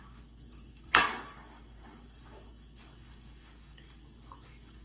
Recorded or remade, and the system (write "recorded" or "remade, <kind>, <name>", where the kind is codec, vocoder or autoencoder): remade, codec, DAC